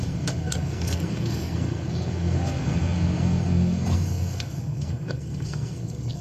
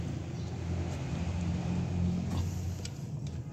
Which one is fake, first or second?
first